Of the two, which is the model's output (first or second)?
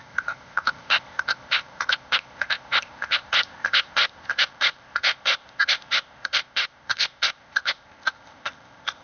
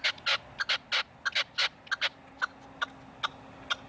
first